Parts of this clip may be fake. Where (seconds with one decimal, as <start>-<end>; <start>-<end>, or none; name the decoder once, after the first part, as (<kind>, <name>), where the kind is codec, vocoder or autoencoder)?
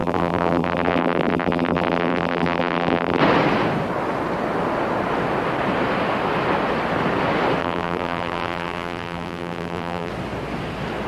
0.0-3.2 (vocoder, BigVGAN v2); 7.6-10.1